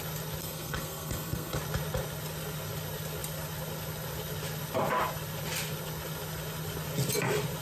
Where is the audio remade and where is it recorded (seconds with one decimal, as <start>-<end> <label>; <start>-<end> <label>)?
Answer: 0.0-0.4 recorded; 0.4-1.6 remade; 1.6-7.6 recorded